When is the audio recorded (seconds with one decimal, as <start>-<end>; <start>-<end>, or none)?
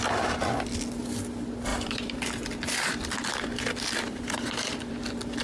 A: 0.0-1.7; 4.9-5.4